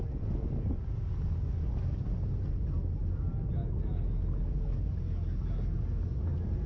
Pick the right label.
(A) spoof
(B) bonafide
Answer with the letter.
B